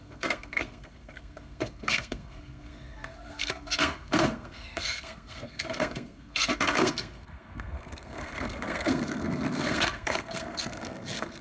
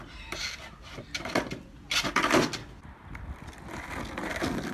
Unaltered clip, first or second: second